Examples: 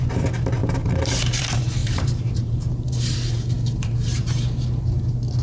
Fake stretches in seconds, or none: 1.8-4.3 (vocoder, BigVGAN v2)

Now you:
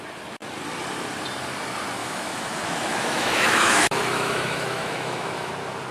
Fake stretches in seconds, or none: 2.0-5.5 (autoencoder, DAC-VAE)

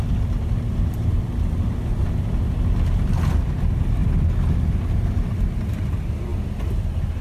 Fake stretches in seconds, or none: 0.0-4.0 (vocoder, BigVGAN v2); 5.0-6.3